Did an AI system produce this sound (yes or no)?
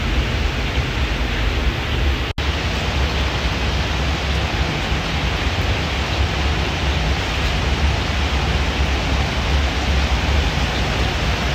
no